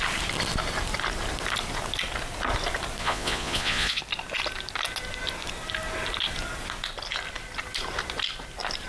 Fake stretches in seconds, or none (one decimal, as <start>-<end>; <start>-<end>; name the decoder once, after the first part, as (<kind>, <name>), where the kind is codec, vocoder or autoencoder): 3.0-4.0 (vocoder, Vocos)